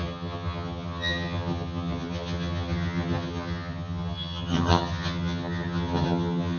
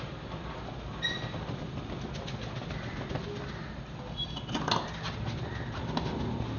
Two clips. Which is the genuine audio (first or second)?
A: second